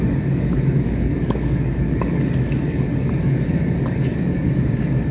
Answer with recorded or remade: remade